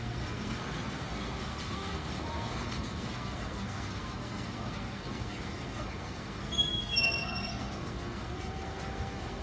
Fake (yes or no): yes